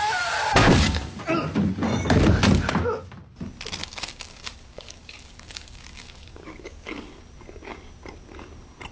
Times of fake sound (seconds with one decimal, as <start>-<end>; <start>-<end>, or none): 0.6-1.2; 3.8-7.2